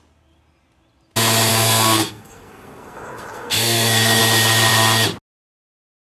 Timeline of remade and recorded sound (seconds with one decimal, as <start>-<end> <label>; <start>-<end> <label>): 0.0-1.5 recorded; 1.5-4.2 remade; 4.2-6.1 recorded